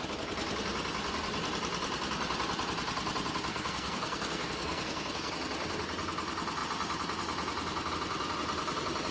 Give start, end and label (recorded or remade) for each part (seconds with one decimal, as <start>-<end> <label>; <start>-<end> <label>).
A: 0.0-3.5 recorded; 3.5-5.3 remade; 5.3-9.1 recorded